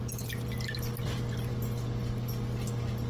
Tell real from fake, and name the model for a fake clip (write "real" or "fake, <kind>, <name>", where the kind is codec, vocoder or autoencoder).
real